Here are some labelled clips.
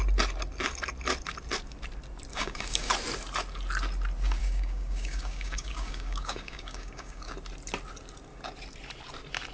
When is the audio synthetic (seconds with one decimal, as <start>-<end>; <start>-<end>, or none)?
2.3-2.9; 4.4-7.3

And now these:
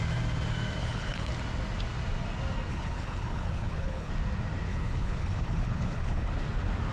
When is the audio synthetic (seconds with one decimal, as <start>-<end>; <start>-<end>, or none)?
0.8-1.3; 2.7-4.1; 4.7-6.3

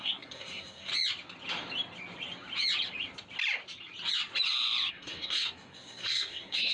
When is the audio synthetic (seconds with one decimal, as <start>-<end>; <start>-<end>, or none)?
0.0-0.9; 4.9-6.7